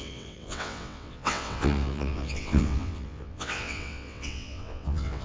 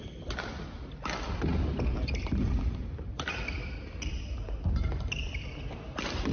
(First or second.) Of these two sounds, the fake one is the first